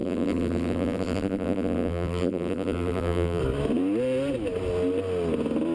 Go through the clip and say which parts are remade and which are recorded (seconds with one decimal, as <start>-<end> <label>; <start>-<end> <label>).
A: 0.0-3.4 remade; 3.4-5.7 recorded